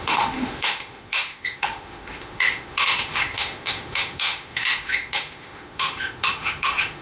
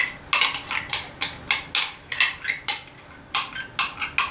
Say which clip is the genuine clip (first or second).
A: second